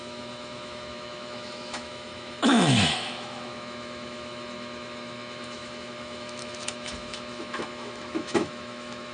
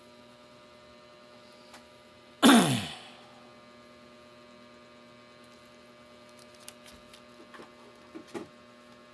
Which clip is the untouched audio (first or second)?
second